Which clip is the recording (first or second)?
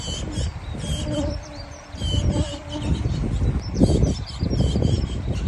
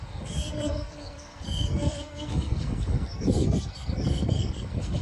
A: first